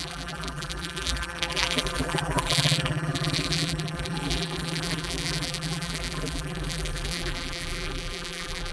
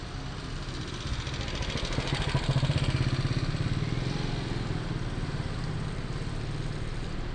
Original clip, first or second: second